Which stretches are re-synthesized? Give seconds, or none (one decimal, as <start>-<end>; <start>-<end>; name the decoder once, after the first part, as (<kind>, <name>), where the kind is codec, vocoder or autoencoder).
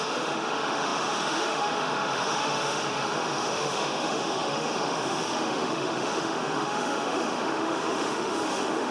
0.0-8.9 (autoencoder, DAC-VAE)